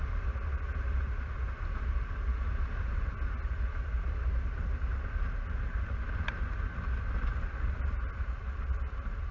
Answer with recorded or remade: recorded